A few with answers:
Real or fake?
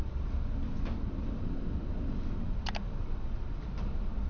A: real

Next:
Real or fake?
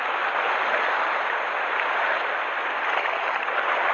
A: real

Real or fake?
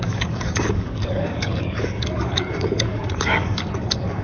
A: fake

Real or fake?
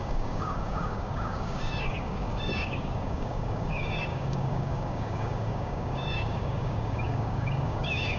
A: fake